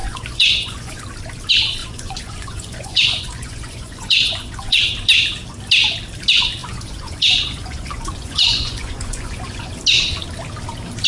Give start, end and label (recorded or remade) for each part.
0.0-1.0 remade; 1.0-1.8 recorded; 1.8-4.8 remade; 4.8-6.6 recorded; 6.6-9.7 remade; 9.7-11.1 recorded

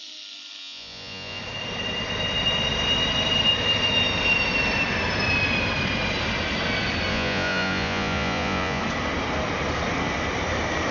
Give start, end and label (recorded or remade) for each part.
0.0-0.6 recorded; 0.6-1.4 remade; 1.4-7.1 recorded; 7.1-8.8 remade; 8.8-10.9 recorded

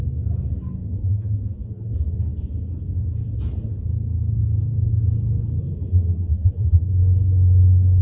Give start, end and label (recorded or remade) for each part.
0.0-1.0 recorded; 1.0-1.9 remade; 1.9-5.6 recorded; 5.6-6.8 remade; 6.8-8.0 recorded